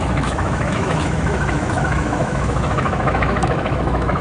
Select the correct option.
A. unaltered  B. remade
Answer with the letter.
B